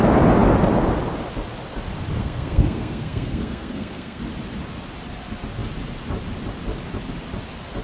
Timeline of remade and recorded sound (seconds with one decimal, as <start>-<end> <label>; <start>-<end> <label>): 0.0-2.2 recorded; 2.2-4.2 remade; 4.2-7.8 recorded